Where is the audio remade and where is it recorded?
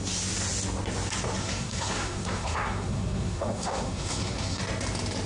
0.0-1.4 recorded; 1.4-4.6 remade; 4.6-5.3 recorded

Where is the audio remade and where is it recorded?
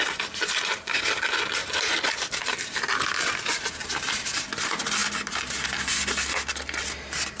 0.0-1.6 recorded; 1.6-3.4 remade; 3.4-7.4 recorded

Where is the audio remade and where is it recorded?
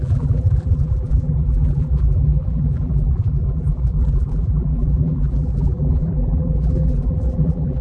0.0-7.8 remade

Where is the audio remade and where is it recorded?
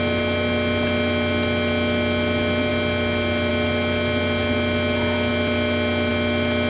0.0-6.7 recorded